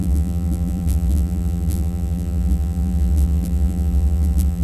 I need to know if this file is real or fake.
fake